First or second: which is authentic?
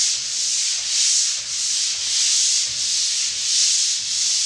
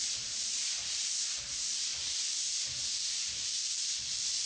first